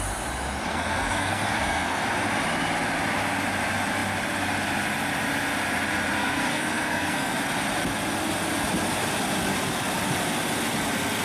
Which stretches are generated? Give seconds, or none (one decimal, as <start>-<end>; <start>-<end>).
0.7-2.0; 6.2-7.4

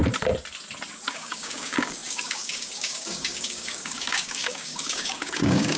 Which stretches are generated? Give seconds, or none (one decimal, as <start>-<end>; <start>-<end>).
1.1-5.8

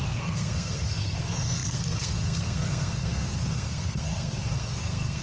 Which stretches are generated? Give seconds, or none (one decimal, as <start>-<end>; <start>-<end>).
0.0-5.2

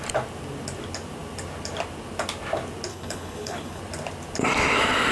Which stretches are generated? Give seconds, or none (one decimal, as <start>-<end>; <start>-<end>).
2.9-3.8

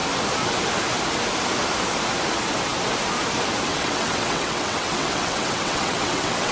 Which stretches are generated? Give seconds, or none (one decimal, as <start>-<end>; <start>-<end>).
3.7-6.5